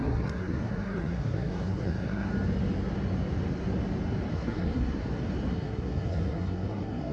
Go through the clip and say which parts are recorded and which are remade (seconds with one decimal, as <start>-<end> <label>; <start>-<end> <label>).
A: 0.0-2.3 remade; 2.3-4.3 recorded; 4.3-5.0 remade; 5.0-5.5 recorded; 5.5-7.1 remade